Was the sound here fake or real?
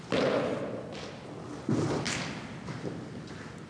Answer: real